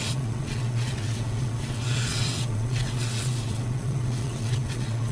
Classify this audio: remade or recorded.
remade